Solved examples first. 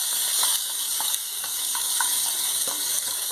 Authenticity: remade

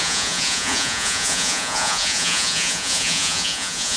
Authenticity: remade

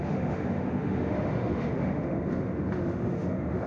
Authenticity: remade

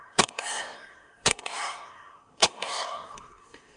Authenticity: remade